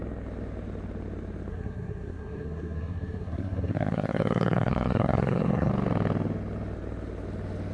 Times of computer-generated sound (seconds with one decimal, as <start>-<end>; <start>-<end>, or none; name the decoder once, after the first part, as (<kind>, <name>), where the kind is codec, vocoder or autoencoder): 1.5-5.7 (codec, SNAC)